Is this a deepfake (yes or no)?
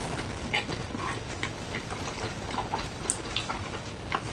no